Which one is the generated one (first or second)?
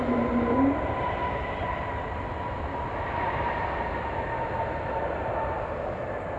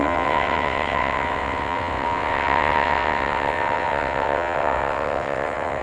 second